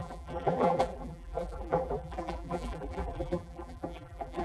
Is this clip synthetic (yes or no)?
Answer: yes